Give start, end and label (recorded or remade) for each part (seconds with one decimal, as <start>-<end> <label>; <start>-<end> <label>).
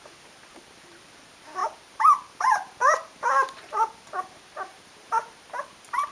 0.0-1.6 recorded; 1.6-3.3 remade; 3.3-4.7 recorded; 4.7-5.5 remade; 5.5-6.1 recorded